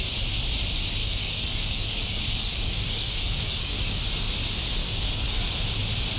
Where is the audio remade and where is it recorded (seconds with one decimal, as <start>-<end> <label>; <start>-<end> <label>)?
0.0-1.0 recorded; 1.0-4.0 remade; 4.0-4.8 recorded; 4.8-5.5 remade; 5.5-6.2 recorded